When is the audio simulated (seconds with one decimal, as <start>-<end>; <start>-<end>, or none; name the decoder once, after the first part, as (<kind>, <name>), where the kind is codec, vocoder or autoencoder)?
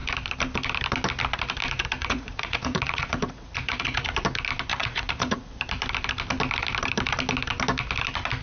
2.0-4.1 (vocoder, Vocos); 4.7-5.5